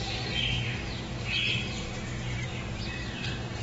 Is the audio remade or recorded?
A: recorded